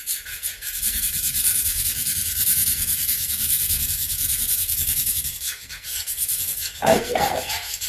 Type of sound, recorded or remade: remade